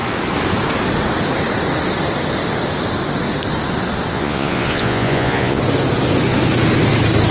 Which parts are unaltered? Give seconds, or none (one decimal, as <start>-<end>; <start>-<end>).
0.0-4.1; 5.6-7.3